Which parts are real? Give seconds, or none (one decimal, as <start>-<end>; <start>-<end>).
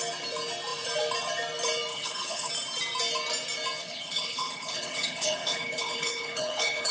0.0-1.9; 2.5-3.8